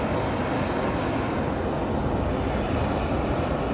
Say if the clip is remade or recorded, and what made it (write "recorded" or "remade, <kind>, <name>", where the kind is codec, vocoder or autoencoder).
recorded